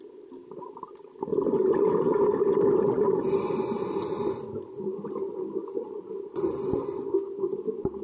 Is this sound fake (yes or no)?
no